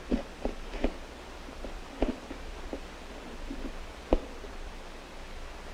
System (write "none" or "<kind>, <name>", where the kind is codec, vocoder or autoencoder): none